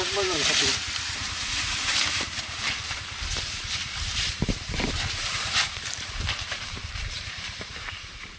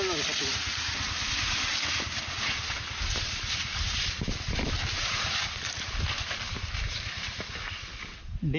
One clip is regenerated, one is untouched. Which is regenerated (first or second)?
first